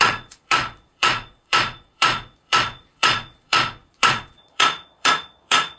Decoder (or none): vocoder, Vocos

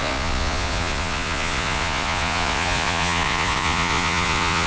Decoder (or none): vocoder, Vocos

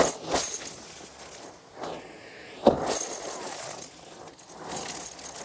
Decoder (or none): none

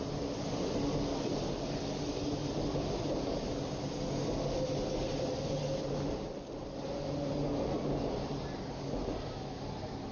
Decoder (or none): none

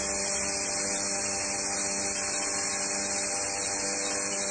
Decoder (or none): none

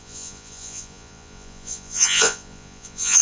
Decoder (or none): vocoder, Vocos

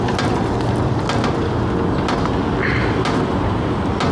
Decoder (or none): none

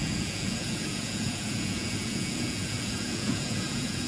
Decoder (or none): vocoder, Vocos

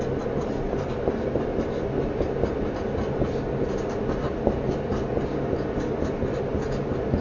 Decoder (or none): none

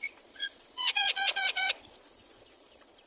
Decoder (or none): vocoder, Vocos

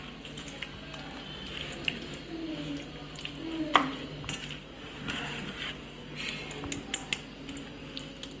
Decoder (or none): none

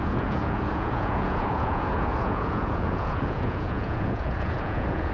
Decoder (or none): vocoder, Vocos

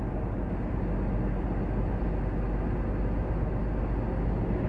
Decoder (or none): none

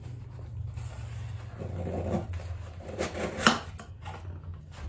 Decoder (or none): none